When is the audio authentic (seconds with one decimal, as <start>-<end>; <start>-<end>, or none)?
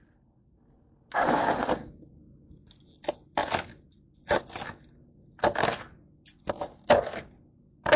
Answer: 0.0-8.0